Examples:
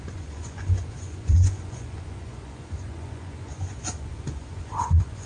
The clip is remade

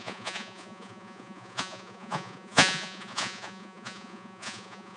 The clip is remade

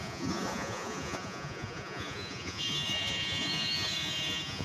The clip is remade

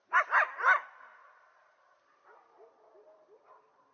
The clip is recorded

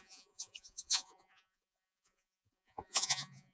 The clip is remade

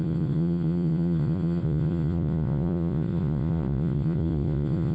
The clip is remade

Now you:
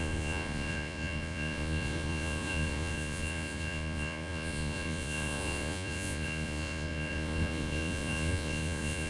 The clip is remade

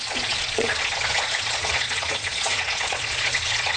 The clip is remade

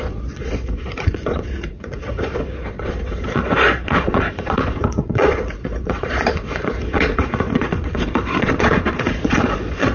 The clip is remade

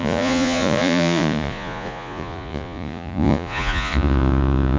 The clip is remade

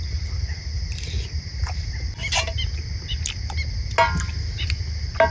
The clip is recorded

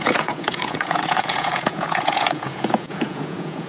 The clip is remade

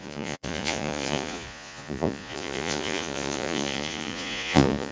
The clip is remade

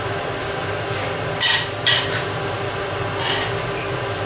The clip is recorded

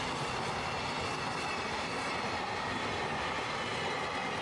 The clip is recorded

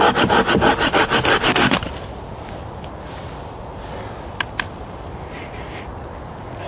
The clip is recorded